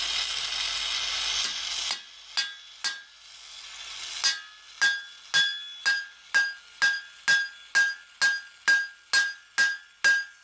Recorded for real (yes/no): yes